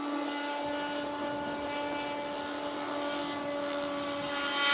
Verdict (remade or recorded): recorded